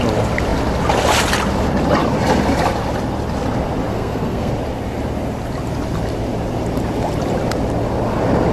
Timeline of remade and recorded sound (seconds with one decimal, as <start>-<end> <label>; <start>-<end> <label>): 0.0-3.9 recorded; 3.9-4.5 remade; 4.5-8.5 recorded